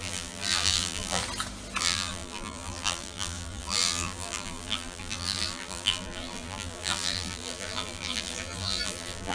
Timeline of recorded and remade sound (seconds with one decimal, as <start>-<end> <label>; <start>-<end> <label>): 0.0-1.2 remade; 1.2-1.8 recorded; 1.8-9.3 remade